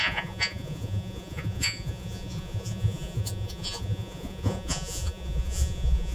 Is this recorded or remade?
remade